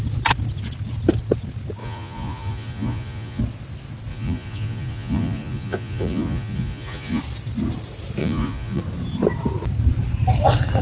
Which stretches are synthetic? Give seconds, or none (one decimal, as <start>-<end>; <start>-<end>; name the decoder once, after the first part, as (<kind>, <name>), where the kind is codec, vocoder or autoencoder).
1.8-3.4 (vocoder, Vocos); 4.1-7.2; 8.2-8.8